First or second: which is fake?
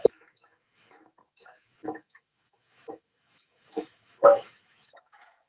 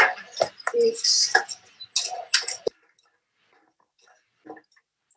first